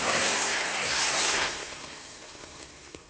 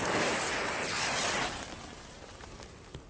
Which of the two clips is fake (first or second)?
first